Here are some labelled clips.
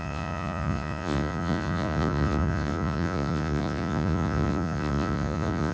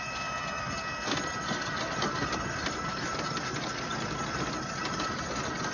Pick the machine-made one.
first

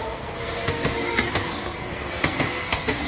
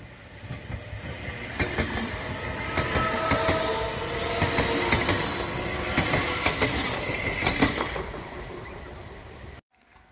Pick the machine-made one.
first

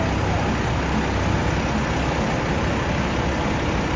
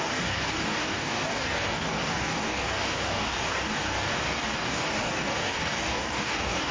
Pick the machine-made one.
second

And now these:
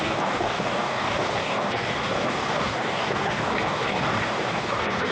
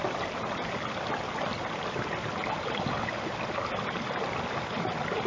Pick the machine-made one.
first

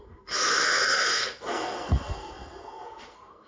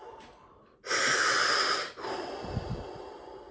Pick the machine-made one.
first